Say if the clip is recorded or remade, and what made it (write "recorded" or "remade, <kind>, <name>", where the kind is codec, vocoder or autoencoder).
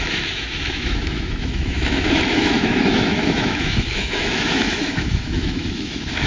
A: remade, autoencoder, DAC-VAE